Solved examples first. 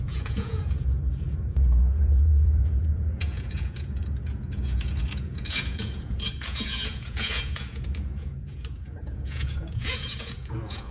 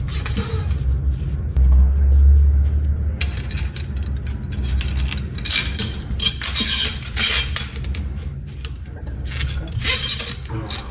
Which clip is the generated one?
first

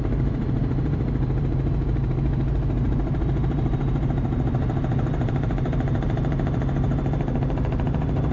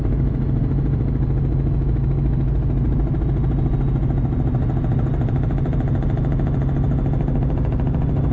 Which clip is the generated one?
first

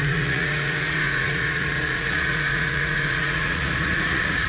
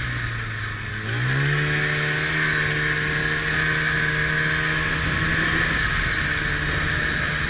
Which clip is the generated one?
first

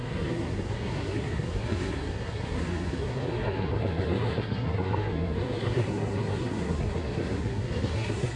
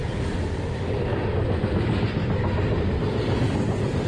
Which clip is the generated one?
first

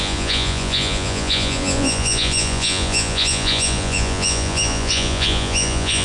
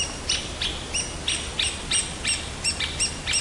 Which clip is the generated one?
first